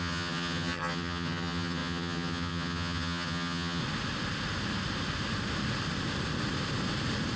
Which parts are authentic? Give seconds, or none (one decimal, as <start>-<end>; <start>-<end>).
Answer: 3.8-7.4

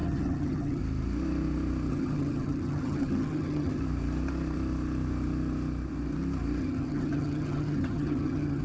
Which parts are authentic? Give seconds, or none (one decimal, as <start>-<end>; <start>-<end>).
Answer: 0.8-1.9; 3.8-6.6

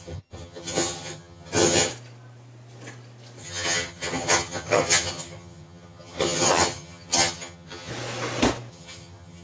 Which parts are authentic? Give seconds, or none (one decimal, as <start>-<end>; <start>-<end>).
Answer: 1.9-3.4; 7.9-8.7

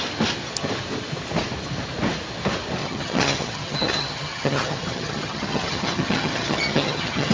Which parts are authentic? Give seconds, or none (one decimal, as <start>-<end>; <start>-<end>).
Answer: 0.0-2.8

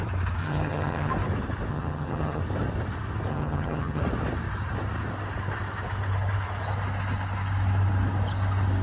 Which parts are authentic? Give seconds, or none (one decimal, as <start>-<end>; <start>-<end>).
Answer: 0.0-0.4; 1.1-1.7; 2.4-3.3; 4.0-8.8

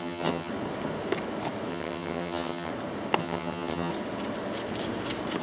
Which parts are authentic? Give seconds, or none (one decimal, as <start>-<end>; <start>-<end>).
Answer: 0.5-1.7; 2.7-3.2; 3.9-5.4

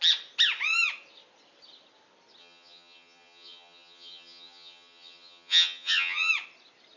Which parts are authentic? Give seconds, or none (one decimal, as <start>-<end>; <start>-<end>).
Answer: 0.0-2.4; 6.3-7.0